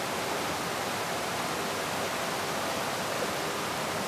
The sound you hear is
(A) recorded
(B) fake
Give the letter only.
A